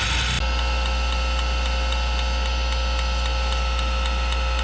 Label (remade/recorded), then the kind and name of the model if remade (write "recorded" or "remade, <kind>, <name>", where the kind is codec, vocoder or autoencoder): recorded